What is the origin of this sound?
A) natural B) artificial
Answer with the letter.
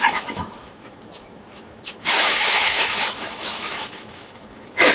B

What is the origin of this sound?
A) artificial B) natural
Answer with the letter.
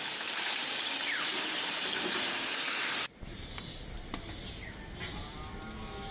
B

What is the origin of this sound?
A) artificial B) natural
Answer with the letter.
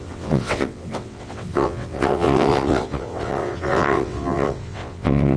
A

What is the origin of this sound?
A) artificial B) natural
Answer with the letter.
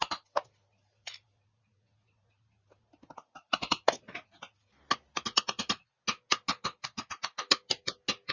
B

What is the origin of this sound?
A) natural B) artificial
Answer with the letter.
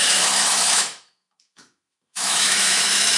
B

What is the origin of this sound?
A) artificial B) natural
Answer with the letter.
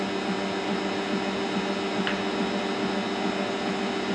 B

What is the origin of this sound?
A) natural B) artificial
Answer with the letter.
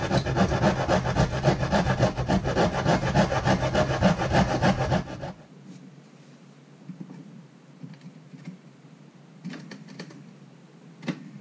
A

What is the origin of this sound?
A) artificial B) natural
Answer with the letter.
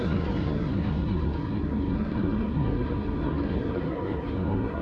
A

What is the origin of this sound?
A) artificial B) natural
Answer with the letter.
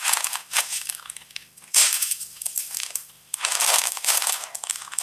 A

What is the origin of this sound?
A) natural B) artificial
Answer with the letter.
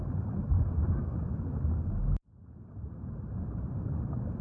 A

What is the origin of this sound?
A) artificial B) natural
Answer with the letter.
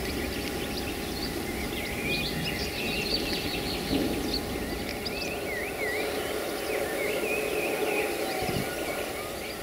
B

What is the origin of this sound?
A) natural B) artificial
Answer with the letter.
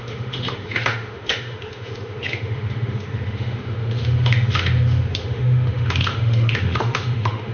B